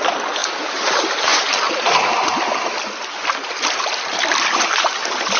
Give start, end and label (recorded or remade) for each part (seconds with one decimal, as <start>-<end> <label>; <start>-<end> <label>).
0.0-5.4 recorded